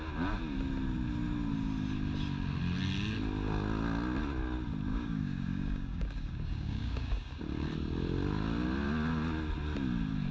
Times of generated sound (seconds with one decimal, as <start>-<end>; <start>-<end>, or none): 4.9-7.4